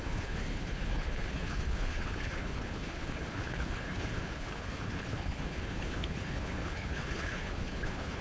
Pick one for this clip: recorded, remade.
remade